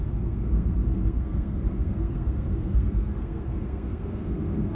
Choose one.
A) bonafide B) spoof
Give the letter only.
B